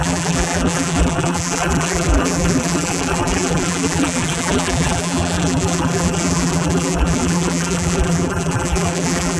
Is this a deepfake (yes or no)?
yes